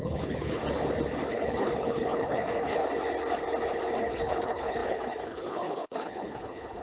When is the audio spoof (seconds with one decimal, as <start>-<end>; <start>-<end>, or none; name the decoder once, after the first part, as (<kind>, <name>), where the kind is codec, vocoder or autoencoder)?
0.0-0.6 (codec, HILCodec); 1.3-2.8; 4.0-6.8